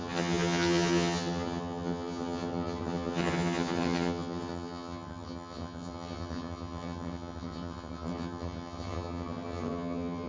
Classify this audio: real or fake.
fake